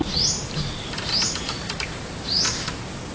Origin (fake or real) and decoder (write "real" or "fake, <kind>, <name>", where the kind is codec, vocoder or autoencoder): real